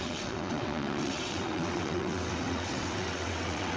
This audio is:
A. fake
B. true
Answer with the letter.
A